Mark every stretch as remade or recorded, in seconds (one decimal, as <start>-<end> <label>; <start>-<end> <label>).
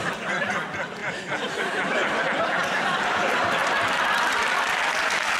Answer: 0.0-3.6 remade; 3.6-5.4 recorded